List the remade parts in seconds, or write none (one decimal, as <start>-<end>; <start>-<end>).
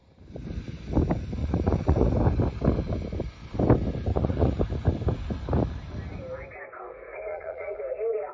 1.4-2.1; 4.1-4.6; 7.3-7.8